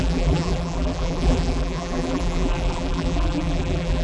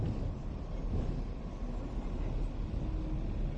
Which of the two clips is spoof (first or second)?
first